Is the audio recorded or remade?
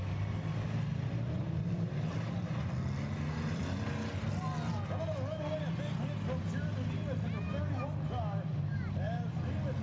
recorded